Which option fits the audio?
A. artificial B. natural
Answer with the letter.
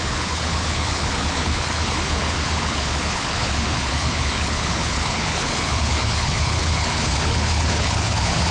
A